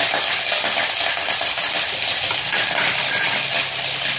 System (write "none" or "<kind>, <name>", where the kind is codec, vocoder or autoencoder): none